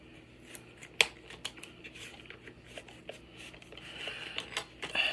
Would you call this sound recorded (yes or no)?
yes